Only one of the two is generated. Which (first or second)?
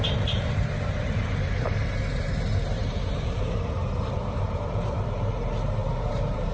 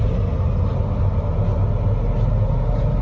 first